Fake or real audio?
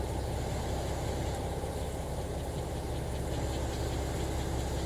real